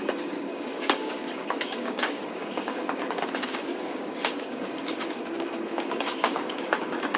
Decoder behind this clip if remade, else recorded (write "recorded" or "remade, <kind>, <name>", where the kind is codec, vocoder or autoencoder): remade, codec, DAC